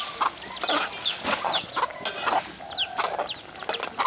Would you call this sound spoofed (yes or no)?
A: no